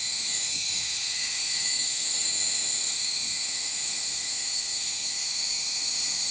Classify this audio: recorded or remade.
remade